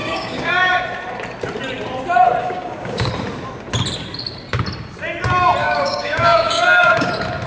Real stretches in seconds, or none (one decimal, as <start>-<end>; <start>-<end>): 0.5-2.4; 3.1-5.6; 7.1-7.5